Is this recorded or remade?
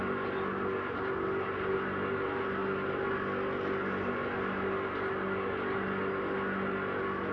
recorded